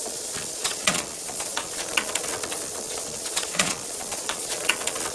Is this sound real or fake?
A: fake